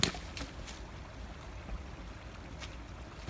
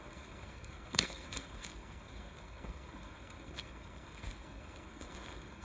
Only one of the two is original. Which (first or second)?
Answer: first